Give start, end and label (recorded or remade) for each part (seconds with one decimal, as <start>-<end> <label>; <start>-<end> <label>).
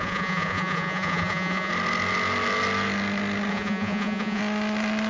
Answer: 0.0-1.7 remade; 1.7-3.5 recorded; 3.5-4.4 remade; 4.4-5.1 recorded